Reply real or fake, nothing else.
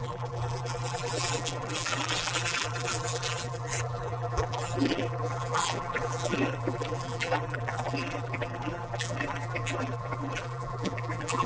fake